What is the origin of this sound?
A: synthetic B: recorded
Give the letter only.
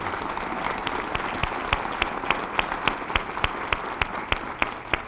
B